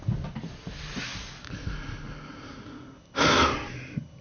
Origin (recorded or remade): recorded